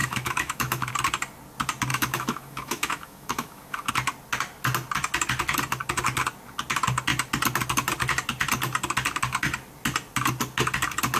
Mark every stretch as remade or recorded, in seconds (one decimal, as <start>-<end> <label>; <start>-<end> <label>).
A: 0.0-0.9 remade; 0.9-1.9 recorded; 1.9-3.9 remade; 3.9-11.2 recorded